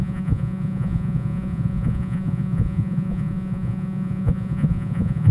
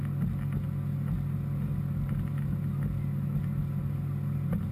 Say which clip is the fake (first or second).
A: first